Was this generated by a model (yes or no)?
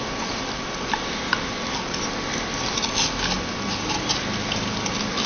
no